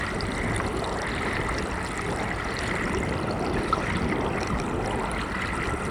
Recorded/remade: recorded